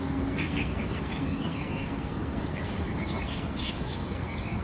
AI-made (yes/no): yes